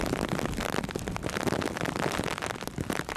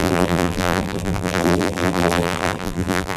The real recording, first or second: first